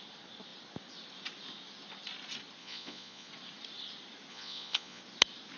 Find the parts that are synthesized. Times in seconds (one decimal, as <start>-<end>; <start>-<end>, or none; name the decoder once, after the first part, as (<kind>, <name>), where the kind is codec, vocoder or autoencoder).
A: 2.6-3.3 (vocoder, Vocos); 4.3-5.0